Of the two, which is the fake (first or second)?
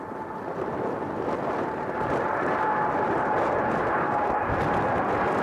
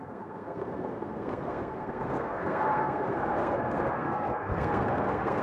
second